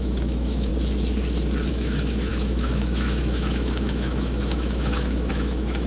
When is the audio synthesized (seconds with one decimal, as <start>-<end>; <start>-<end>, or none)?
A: 0.0-0.7; 1.7-5.9